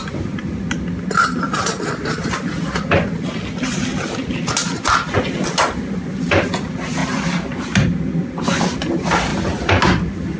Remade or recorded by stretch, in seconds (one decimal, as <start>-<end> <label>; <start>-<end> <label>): 0.0-10.4 recorded